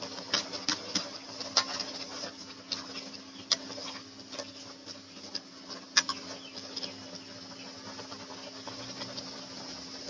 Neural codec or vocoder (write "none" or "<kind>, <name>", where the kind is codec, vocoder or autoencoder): none